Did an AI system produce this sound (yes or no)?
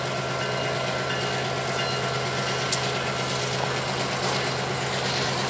no